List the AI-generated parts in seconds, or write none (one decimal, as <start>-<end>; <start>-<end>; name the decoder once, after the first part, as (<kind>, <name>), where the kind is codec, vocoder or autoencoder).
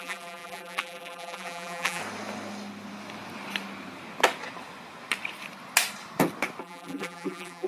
0.0-2.0 (vocoder, BigVGAN v2); 6.6-7.7